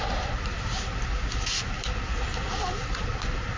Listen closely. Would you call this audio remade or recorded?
recorded